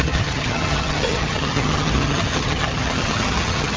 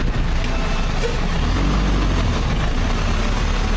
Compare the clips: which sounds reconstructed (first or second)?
first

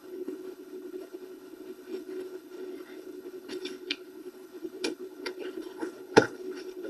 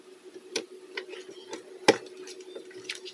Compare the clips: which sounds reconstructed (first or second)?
first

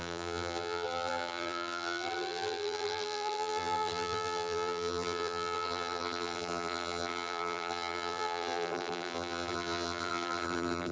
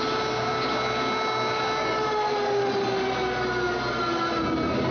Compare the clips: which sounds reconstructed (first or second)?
first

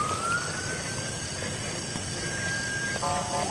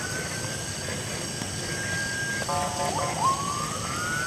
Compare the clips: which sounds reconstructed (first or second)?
first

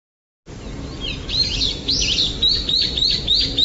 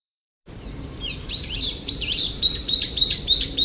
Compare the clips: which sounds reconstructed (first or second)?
second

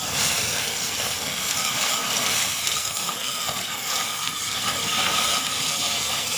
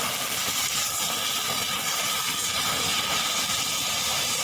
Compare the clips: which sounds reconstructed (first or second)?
first